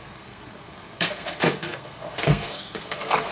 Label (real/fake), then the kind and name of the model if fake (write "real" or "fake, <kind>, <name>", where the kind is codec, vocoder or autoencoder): fake, codec, SNAC